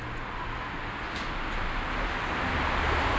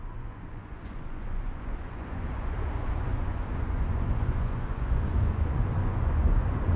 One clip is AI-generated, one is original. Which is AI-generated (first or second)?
second